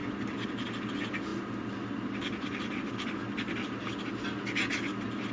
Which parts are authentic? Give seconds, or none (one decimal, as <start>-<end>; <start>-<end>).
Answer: 0.0-5.3